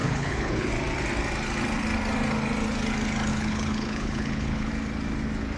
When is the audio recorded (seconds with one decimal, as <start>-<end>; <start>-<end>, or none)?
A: 0.7-3.3; 4.7-5.6